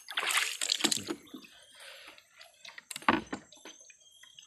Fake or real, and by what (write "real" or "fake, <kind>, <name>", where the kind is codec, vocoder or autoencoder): real